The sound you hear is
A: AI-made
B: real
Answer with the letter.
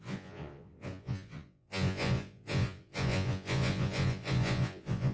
A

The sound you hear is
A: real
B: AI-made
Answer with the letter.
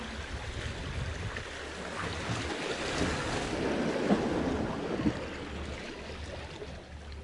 A